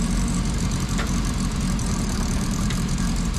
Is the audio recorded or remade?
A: remade